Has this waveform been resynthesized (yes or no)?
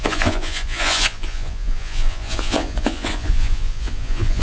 yes